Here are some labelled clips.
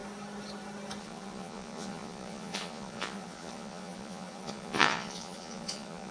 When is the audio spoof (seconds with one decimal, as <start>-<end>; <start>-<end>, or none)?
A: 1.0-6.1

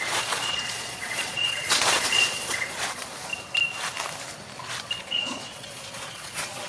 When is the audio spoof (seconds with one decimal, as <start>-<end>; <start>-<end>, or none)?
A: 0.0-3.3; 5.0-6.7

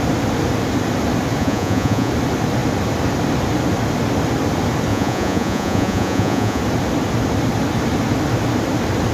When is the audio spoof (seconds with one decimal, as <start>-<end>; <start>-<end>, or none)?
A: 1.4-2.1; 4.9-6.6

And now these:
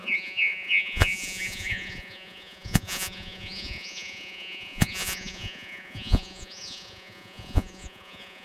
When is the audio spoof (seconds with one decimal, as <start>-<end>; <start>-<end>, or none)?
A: 0.0-8.4

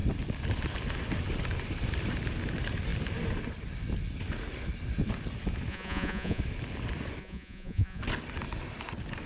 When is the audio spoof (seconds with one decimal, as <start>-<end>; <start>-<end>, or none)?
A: 5.7-6.4; 7.2-8.0

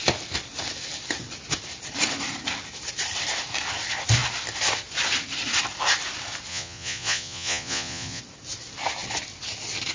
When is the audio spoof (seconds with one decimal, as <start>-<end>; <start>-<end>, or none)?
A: 6.5-8.2

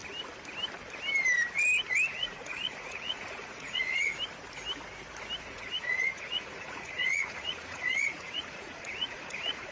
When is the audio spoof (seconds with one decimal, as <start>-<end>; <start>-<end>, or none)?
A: 2.1-4.1; 5.4-9.7

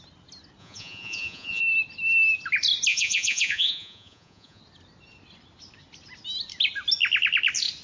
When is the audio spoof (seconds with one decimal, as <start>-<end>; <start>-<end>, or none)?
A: 0.6-1.6; 2.9-4.6